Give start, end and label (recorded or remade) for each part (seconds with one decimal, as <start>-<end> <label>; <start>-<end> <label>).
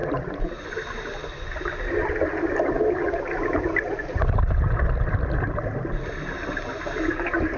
0.0-7.6 recorded